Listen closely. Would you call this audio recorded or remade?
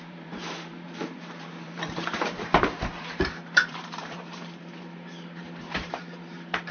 remade